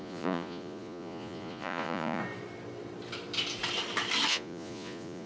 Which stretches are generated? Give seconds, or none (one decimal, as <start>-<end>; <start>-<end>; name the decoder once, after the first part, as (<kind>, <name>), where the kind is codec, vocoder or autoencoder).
0.0-2.2 (vocoder, Vocos); 4.3-5.3